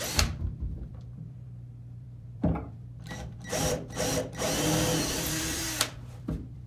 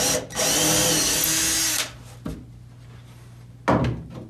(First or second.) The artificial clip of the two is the first